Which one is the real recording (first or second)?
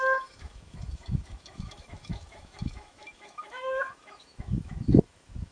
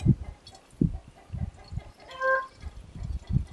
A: second